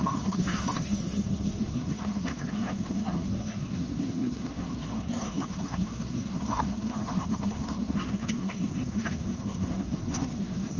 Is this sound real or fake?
fake